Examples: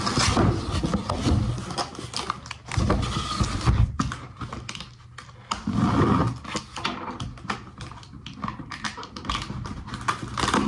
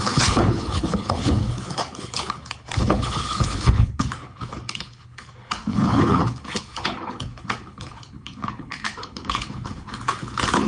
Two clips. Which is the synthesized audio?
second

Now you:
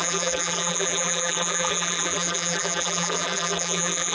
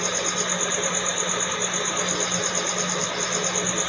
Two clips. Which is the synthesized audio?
first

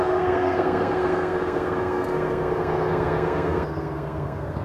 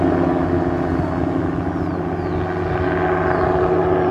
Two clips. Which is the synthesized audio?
first